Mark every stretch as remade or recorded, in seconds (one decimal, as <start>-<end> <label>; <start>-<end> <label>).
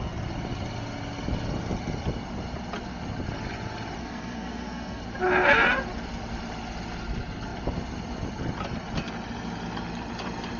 0.0-4.0 recorded; 4.0-5.0 remade; 5.0-10.6 recorded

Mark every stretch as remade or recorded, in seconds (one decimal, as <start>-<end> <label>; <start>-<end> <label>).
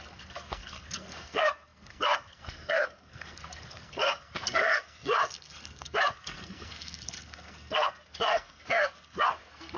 0.0-9.8 remade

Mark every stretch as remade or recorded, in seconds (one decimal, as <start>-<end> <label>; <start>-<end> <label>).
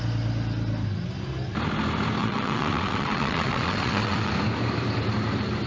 0.0-2.2 recorded; 2.2-4.3 remade; 4.3-5.7 recorded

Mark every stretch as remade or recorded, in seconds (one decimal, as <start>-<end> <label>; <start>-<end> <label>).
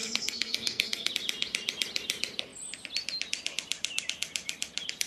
0.0-1.1 remade; 1.1-5.1 recorded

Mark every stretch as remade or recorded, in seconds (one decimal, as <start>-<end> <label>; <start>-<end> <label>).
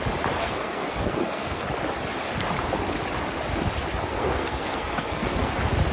0.0-0.4 recorded; 0.4-1.6 remade; 1.6-4.1 recorded; 4.1-5.5 remade; 5.5-5.9 recorded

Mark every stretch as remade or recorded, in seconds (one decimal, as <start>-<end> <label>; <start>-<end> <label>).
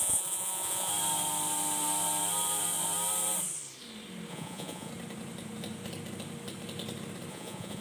0.0-0.9 remade; 0.9-4.3 recorded; 4.3-4.9 remade; 4.9-7.3 recorded; 7.3-7.8 remade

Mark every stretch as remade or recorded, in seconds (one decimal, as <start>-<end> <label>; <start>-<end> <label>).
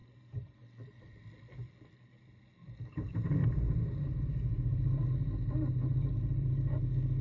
0.0-0.6 remade; 0.6-3.4 recorded; 3.4-6.8 remade; 6.8-7.2 recorded